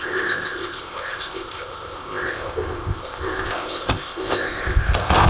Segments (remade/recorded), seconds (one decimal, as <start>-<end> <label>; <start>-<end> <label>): 0.0-5.3 remade